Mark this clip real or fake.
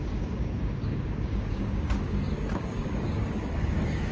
fake